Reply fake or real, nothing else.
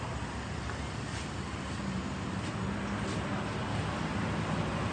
real